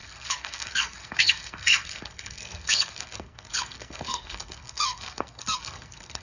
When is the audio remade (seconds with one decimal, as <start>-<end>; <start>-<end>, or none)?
0.0-6.2